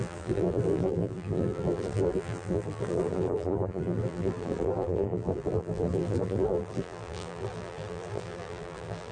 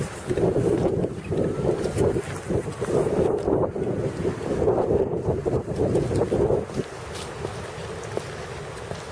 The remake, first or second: first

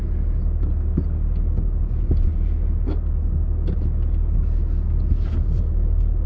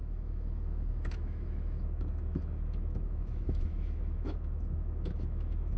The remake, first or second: second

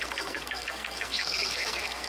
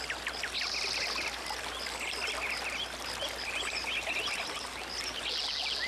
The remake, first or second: first